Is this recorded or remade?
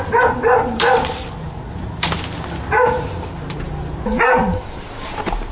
recorded